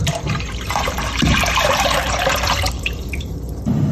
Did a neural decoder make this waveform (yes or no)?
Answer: yes